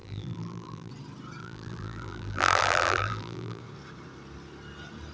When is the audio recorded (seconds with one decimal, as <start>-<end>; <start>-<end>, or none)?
0.9-1.4; 3.6-5.1